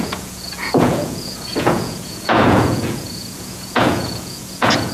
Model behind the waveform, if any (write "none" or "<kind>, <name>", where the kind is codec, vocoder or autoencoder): vocoder, Vocos